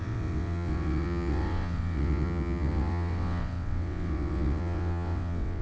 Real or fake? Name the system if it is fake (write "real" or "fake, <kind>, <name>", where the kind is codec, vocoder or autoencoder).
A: fake, vocoder, WaveNeXt